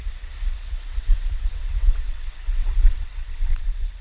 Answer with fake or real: fake